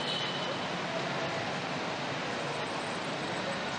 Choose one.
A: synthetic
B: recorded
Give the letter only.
B